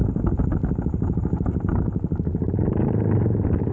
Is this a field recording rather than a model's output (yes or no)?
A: yes